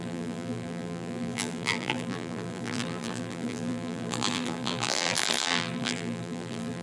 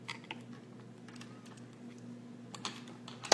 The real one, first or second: second